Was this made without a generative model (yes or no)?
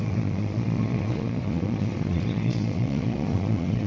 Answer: no